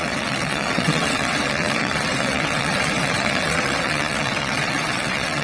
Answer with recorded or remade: remade